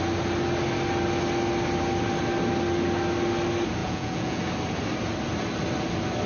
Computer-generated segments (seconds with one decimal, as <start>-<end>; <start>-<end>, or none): 3.8-4.4